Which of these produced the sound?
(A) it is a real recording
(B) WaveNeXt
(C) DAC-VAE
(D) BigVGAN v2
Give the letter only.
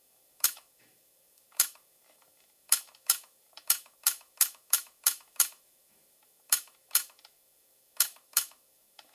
C